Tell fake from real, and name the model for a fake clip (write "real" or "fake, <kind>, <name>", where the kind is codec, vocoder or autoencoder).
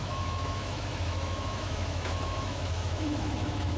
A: fake, autoencoder, DAC-VAE